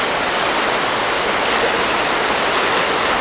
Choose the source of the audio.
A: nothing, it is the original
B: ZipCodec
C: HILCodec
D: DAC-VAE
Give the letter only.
A